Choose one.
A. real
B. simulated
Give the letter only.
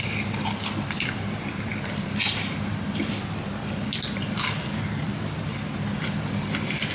A